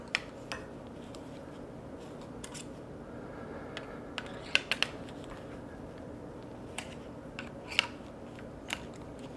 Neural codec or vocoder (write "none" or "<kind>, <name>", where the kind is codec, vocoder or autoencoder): none